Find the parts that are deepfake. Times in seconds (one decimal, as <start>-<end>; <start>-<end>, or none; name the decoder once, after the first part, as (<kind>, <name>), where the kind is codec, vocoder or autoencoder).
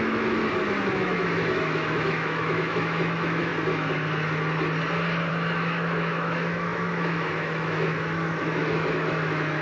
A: 0.0-0.4 (autoencoder, DAC-VAE); 0.9-3.5; 5.3-9.6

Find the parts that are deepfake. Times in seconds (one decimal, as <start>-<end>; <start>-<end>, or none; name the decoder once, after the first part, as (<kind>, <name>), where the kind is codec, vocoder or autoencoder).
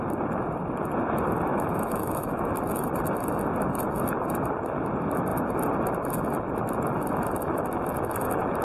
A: 1.5-2.5 (autoencoder, DAC-VAE)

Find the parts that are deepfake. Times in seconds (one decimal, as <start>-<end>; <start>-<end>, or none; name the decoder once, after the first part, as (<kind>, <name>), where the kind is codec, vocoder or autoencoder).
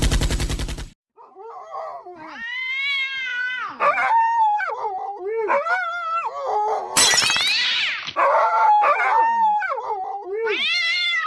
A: 2.0-2.8 (vocoder, BigVGAN v2); 3.3-4.7; 10.3-11.3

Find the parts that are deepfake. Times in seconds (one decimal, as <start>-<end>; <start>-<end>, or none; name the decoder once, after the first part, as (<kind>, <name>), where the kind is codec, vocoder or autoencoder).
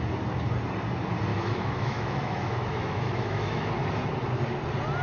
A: 1.3-3.7 (autoencoder, DAC-VAE)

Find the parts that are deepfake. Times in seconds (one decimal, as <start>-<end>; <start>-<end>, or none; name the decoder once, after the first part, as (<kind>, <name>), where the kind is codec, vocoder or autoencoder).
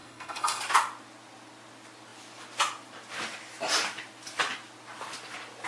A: 0.0-0.6 (codec, SNAC)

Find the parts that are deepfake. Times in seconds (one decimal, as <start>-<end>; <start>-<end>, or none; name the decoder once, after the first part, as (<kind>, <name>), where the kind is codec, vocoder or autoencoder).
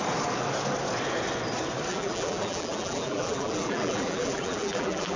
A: 1.9-5.2 (vocoder, BigVGAN v2)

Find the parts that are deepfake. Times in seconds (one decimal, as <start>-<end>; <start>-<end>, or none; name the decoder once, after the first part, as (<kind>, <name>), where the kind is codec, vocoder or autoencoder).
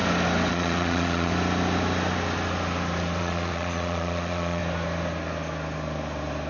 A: 0.5-1.3 (vocoder, Vocos); 3.2-4.6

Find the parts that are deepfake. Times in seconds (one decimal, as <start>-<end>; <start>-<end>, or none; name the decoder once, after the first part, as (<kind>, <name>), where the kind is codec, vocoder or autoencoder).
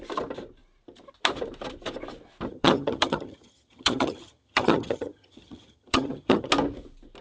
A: 2.5-6.5 (vocoder, HiFi-GAN)